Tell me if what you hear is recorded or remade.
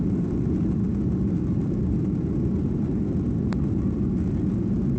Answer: recorded